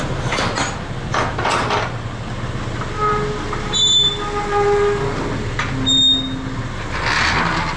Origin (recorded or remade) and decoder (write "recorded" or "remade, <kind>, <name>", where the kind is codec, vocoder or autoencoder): recorded